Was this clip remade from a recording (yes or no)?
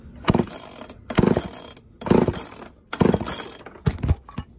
no